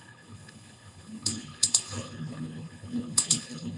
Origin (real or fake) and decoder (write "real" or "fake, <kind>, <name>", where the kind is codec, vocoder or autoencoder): fake, codec, HILCodec